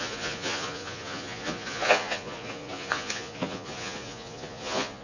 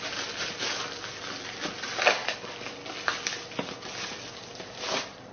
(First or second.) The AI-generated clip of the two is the first